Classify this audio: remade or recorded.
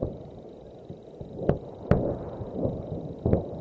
recorded